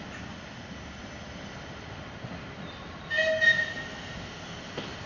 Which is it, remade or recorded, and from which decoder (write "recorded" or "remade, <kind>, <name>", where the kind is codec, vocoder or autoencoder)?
recorded